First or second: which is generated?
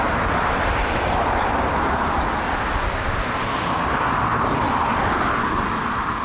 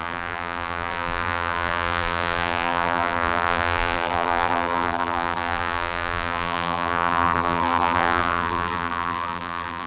second